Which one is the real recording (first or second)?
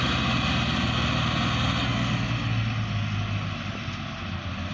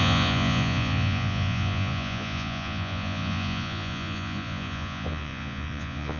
first